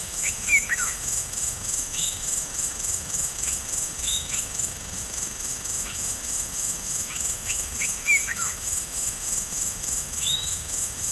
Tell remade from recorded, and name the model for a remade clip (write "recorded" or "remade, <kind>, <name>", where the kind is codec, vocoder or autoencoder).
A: remade, autoencoder, DAC-VAE